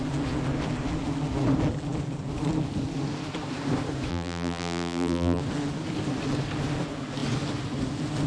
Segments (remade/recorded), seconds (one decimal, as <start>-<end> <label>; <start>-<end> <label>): 0.0-4.1 recorded; 4.1-5.4 remade; 5.4-8.3 recorded